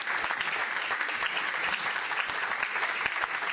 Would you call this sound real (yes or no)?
yes